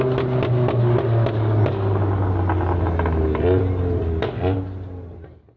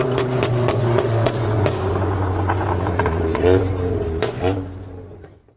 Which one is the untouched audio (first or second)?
first